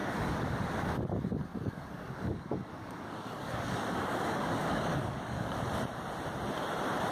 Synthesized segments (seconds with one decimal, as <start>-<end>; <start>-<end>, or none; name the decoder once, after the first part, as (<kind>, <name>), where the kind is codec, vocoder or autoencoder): 0.0-0.6 (codec, DAC); 1.5-5.6